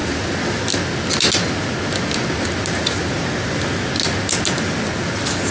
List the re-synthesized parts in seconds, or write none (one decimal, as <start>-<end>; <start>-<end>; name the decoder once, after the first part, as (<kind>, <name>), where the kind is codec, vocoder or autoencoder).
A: none

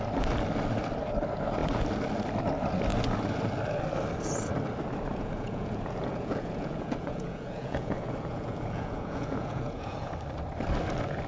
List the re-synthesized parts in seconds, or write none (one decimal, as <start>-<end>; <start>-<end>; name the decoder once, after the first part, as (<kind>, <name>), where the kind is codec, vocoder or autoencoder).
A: 5.1-10.1 (vocoder, Vocos)

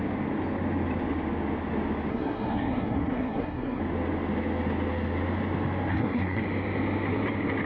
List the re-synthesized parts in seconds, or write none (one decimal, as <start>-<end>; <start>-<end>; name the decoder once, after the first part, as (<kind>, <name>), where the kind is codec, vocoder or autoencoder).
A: 2.1-3.8 (codec, SNAC); 5.9-6.4

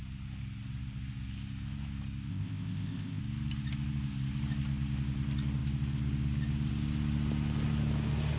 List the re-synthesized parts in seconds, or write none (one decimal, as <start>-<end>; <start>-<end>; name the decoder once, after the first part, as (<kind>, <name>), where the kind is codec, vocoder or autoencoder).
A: 2.3-3.2 (codec, ZipCodec)

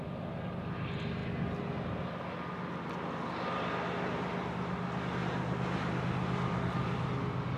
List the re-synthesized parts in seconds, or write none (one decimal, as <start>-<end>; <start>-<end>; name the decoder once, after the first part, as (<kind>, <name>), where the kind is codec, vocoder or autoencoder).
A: none